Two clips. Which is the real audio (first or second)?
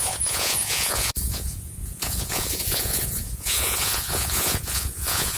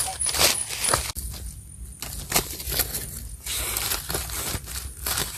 second